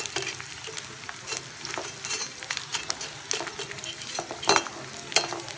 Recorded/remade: recorded